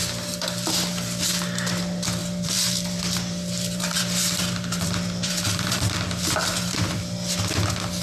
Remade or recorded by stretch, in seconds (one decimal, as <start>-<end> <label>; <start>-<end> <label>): 0.0-2.2 recorded; 2.2-7.0 remade; 7.0-8.0 recorded